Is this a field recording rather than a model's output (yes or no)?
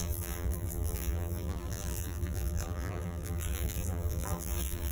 no